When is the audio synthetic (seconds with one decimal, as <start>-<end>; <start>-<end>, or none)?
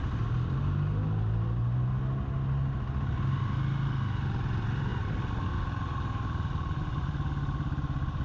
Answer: none